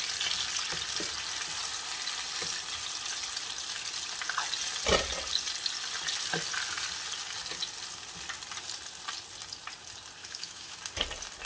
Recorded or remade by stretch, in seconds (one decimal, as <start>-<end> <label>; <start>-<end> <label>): 0.0-10.2 recorded; 10.2-10.8 remade; 10.8-11.5 recorded